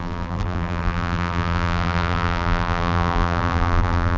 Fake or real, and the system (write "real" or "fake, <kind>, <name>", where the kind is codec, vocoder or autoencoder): fake, vocoder, BigVGAN v2